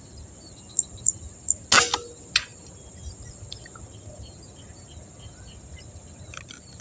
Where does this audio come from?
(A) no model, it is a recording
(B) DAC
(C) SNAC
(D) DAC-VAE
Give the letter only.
A